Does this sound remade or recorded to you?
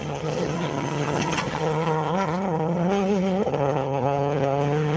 remade